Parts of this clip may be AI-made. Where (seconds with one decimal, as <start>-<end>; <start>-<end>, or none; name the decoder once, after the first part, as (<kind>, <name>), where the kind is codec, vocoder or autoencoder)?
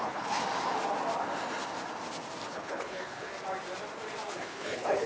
0.0-0.4 (codec, HILCodec); 2.5-3.3; 4.3-5.1